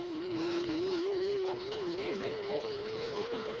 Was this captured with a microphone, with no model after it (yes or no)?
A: no